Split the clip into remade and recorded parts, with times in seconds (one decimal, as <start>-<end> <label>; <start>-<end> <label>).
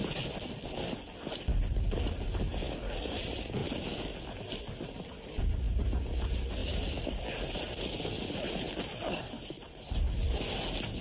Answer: 0.0-11.0 recorded